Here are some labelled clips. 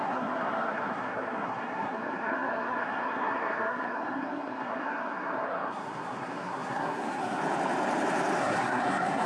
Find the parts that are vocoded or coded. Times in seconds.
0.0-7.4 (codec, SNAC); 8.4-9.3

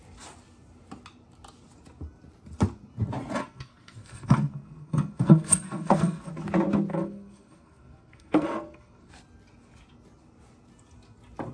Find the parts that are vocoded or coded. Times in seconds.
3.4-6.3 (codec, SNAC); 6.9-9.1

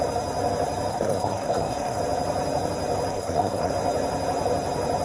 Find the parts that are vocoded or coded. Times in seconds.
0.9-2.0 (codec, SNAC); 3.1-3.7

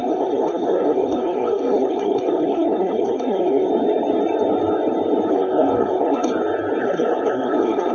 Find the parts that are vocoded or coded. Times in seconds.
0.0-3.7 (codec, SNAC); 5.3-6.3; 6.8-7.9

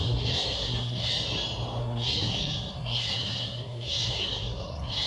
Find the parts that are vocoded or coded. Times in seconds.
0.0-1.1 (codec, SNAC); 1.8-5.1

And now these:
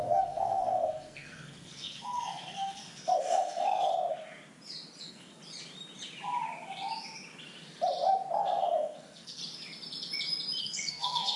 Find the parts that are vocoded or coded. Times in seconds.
0.0-3.9 (codec, SNAC); 5.0-5.4; 8.4-9.4; 10.6-11.4

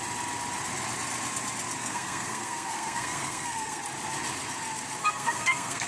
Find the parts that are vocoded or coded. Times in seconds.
1.8-3.8 (codec, SNAC); 5.0-5.9